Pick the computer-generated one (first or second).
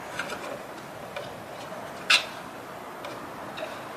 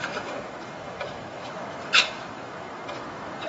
second